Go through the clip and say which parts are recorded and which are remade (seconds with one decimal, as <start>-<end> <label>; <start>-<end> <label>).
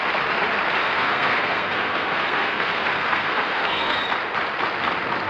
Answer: 0.0-0.8 recorded; 0.8-4.0 remade; 4.0-5.3 recorded